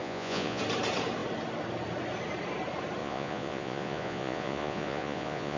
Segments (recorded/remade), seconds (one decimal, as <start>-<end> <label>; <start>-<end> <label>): 0.0-0.6 remade; 0.6-3.0 recorded; 3.0-5.6 remade